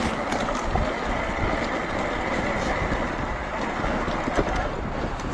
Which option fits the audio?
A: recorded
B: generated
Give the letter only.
A